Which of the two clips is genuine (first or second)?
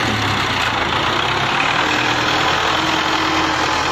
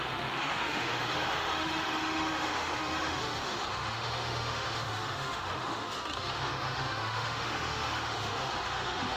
first